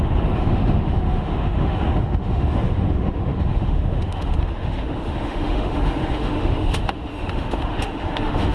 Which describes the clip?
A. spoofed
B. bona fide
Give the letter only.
A